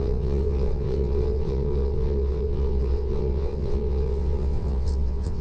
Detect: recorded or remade remade